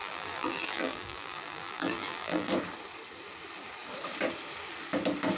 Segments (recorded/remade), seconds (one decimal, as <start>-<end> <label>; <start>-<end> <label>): 0.0-2.5 remade; 2.5-5.4 recorded